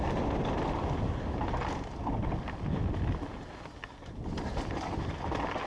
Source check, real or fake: real